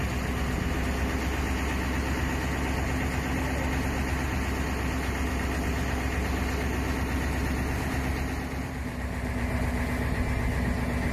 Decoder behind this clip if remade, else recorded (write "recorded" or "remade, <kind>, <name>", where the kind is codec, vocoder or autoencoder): recorded